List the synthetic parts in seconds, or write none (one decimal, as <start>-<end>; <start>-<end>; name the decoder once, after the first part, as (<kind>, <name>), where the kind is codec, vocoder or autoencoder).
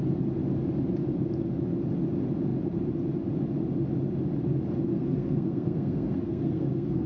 4.9-7.1 (codec, SNAC)